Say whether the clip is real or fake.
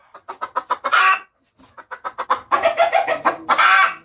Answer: real